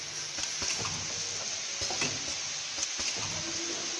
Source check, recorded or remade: recorded